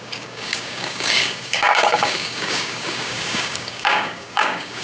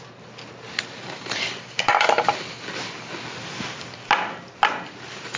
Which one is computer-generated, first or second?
first